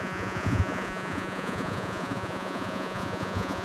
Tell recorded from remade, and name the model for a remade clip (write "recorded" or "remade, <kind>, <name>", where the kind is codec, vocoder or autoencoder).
remade, vocoder, Vocos